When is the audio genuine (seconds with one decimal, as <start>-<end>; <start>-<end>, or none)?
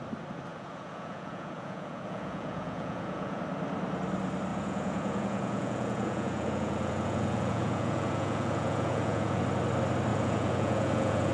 0.0-0.5; 3.4-4.5; 9.4-10.1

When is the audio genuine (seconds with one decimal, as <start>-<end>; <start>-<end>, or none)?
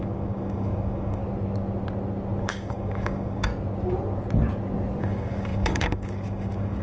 1.2-2.4; 3.5-5.0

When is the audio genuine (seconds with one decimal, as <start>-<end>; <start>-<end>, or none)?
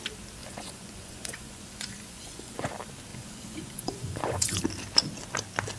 0.0-0.4; 2.7-3.1; 4.6-5.8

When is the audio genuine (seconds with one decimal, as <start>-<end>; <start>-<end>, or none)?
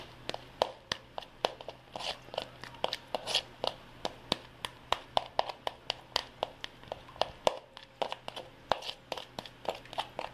0.0-10.3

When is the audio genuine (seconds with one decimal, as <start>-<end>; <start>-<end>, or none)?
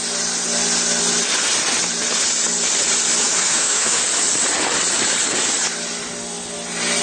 0.0-3.2; 4.0-7.0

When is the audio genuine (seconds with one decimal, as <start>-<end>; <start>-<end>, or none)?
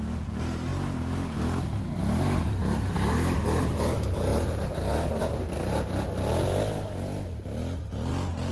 0.0-8.5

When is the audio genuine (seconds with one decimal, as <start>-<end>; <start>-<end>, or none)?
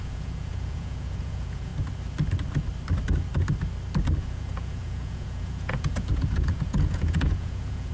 1.7-4.2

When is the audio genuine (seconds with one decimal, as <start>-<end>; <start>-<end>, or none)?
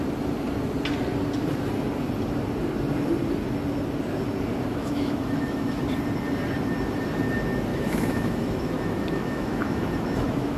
0.0-4.7; 5.8-7.7